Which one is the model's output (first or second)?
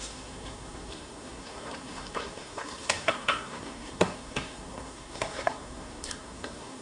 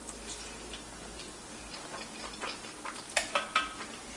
first